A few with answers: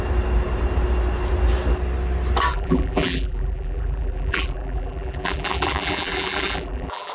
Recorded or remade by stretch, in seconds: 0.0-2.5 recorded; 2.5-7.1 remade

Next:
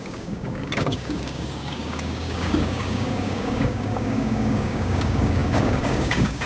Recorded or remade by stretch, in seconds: 0.0-6.5 remade

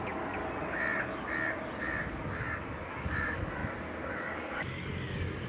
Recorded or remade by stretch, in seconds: 0.0-0.4 remade; 0.4-1.8 recorded; 1.8-3.6 remade; 3.6-4.1 recorded; 4.1-4.8 remade; 4.8-5.5 recorded

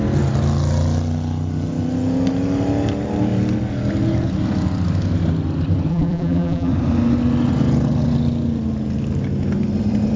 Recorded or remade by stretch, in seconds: 0.0-5.9 recorded; 5.9-6.7 remade; 6.7-10.2 recorded